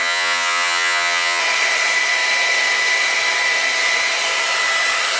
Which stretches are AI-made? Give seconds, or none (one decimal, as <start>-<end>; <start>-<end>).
0.0-1.4